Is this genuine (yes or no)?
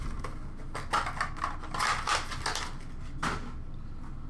yes